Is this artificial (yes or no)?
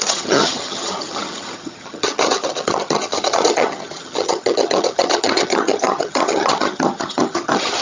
yes